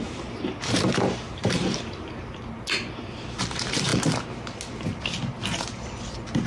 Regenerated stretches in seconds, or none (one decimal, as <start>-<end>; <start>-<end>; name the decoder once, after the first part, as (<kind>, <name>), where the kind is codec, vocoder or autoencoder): 0.0-1.6 (vocoder, BigVGAN v2); 3.4-3.9